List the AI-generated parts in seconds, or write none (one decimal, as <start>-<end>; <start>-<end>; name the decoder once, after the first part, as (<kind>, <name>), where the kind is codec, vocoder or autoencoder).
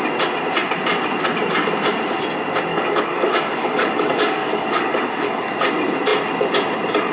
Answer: 2.7-5.5 (codec, DAC)